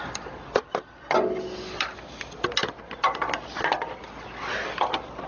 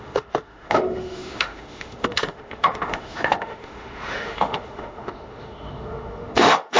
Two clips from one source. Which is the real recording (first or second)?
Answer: first